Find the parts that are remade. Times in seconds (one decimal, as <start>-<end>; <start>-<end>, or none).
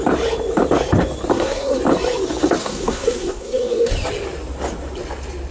1.3-1.8; 2.6-3.9